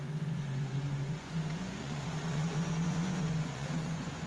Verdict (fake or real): fake